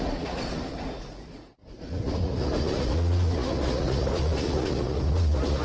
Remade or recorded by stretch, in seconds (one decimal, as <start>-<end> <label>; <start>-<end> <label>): 0.0-5.6 remade